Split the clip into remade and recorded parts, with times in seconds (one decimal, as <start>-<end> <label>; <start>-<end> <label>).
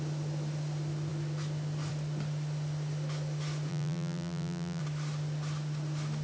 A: 0.0-3.7 recorded; 3.7-4.8 remade; 4.8-6.2 recorded